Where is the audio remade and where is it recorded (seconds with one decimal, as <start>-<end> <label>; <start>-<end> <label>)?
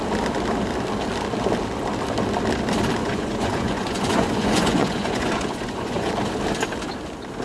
0.0-3.0 recorded; 3.0-6.1 remade; 6.1-7.4 recorded